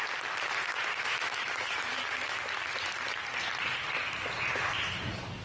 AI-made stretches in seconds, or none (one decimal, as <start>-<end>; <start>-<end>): 0.9-2.4